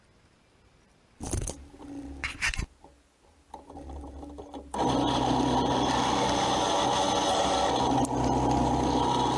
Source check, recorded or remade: recorded